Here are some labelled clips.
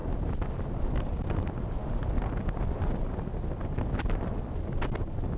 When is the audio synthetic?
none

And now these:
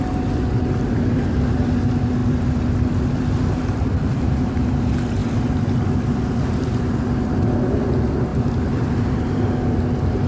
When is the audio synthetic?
5.2-7.0 (vocoder, BigVGAN v2); 8.3-9.5

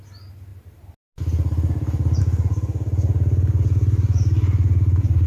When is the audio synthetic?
none

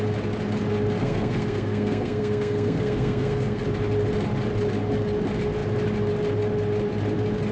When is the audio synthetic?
1.0-3.6 (codec, SNAC)

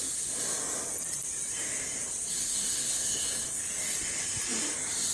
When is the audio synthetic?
2.4-3.6 (codec, SNAC)

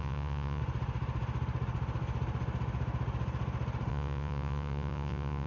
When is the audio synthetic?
0.0-0.6 (vocoder, Vocos); 3.9-5.5

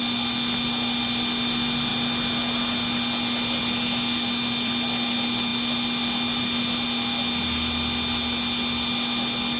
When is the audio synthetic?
none

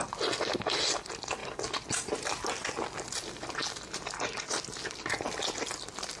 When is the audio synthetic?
none